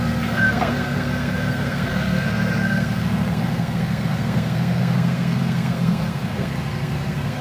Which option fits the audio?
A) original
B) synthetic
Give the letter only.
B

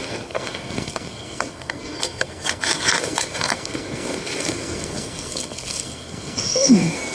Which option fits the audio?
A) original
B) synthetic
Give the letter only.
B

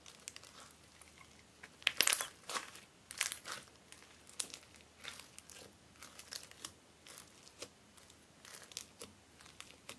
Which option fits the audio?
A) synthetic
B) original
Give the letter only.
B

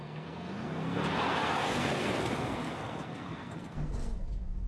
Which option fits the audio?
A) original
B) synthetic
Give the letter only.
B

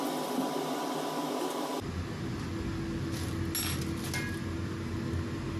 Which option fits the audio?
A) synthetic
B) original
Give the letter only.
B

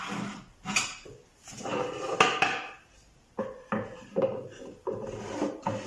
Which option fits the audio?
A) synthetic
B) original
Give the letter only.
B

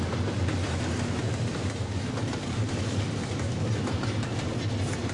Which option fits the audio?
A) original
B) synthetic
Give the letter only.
A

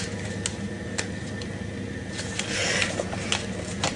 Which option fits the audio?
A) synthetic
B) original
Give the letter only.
B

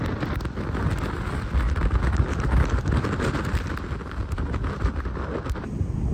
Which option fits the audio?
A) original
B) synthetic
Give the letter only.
A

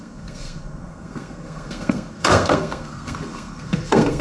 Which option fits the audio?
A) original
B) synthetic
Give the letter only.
B